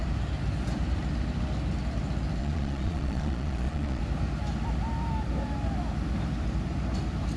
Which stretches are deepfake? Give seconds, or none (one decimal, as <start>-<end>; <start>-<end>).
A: 2.4-4.0